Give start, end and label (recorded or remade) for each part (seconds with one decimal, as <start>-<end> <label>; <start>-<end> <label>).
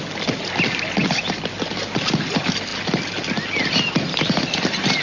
0.0-5.0 recorded